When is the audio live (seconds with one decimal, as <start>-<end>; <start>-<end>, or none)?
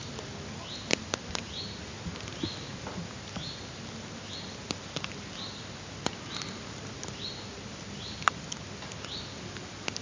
0.0-10.0